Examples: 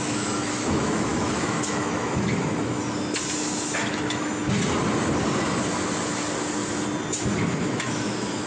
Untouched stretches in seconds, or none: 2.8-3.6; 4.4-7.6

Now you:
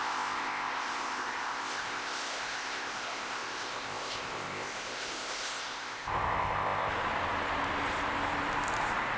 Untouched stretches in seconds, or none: 6.9-9.2